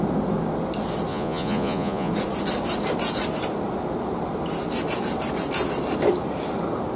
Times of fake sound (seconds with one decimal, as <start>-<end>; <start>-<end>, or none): 1.1-2.1